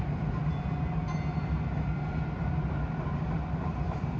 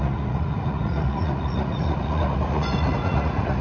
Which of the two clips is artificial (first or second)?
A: second